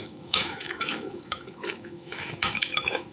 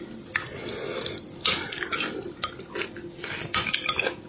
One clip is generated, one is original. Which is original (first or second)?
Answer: second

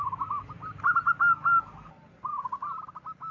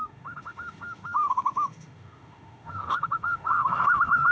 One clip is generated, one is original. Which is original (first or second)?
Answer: first